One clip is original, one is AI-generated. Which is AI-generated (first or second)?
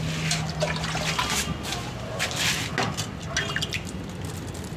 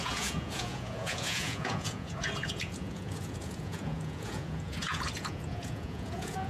second